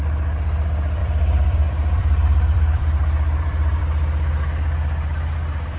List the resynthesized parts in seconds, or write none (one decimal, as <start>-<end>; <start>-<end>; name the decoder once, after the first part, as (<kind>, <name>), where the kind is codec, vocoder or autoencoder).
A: 1.0-3.8 (vocoder, BigVGAN v2)